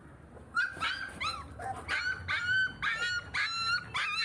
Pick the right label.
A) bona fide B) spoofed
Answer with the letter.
A